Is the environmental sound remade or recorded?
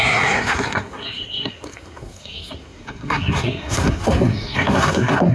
remade